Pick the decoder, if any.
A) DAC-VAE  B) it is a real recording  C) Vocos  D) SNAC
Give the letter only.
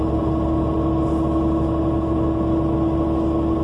B